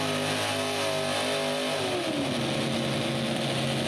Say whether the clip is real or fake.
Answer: real